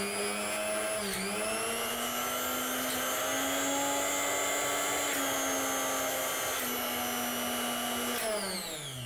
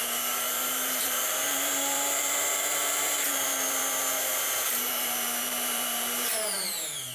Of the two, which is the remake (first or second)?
second